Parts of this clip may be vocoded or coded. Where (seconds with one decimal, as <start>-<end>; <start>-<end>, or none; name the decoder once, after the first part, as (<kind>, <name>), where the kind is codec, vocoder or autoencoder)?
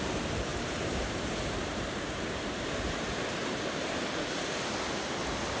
0.5-2.7 (vocoder, BigVGAN v2); 3.4-4.0